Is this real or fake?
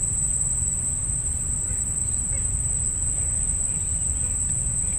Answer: real